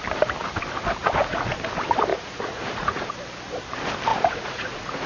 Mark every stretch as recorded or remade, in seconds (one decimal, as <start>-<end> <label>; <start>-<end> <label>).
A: 0.0-1.0 recorded; 1.0-1.5 remade; 1.5-2.1 recorded; 2.1-3.1 remade; 3.1-4.1 recorded; 4.1-5.1 remade